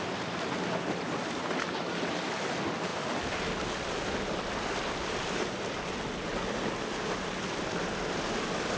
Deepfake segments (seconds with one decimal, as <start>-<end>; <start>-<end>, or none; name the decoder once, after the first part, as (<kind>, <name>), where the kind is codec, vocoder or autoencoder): none